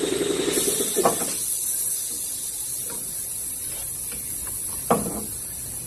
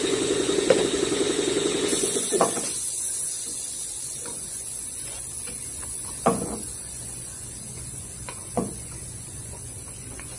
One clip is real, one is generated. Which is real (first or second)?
first